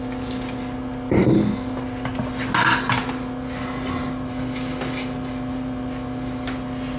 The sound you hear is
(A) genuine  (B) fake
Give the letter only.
A